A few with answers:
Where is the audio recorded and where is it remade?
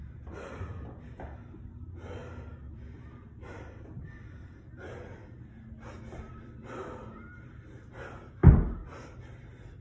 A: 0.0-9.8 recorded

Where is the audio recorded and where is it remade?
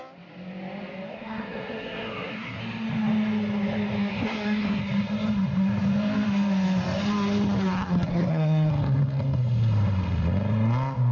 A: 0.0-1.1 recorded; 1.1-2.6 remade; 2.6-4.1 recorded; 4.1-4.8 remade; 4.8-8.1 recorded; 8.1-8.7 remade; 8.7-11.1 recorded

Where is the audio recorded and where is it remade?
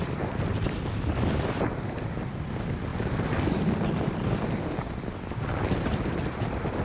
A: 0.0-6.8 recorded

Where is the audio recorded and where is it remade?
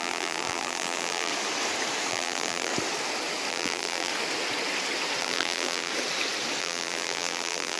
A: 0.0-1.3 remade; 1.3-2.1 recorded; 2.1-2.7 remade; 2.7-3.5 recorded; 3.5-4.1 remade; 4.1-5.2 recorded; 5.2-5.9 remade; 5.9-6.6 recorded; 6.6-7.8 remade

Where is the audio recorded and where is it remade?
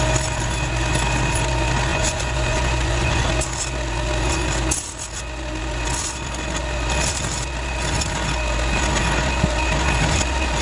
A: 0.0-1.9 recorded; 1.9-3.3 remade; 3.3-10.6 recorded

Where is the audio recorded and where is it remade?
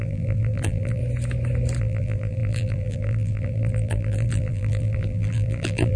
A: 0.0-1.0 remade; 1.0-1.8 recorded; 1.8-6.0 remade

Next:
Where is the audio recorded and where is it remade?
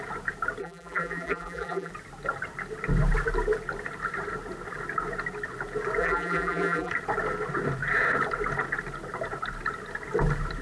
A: 0.0-0.6 recorded; 0.6-1.9 remade; 1.9-6.0 recorded; 6.0-6.9 remade; 6.9-10.6 recorded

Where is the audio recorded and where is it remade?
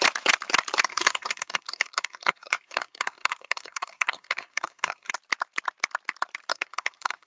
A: 0.0-0.9 recorded; 0.9-5.1 remade; 5.1-6.5 recorded; 6.5-7.3 remade